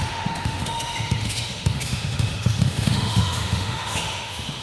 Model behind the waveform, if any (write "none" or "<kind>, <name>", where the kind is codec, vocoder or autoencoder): autoencoder, DAC-VAE